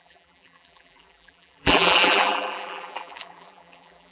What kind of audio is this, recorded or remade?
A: remade